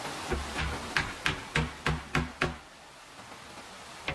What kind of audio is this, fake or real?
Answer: real